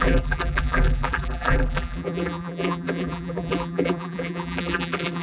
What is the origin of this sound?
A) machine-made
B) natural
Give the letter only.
A